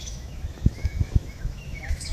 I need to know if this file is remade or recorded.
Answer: remade